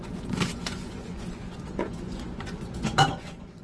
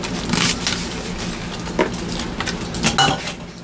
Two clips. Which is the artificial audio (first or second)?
first